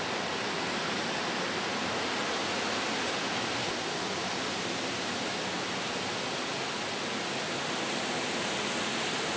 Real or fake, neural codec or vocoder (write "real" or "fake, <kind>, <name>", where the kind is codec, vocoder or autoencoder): real